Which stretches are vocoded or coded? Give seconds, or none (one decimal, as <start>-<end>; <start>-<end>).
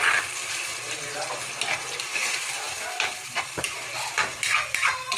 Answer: 2.1-3.4